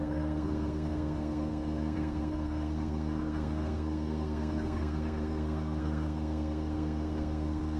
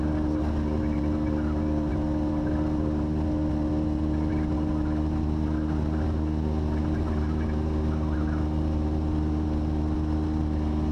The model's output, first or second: first